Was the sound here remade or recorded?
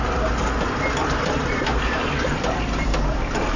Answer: remade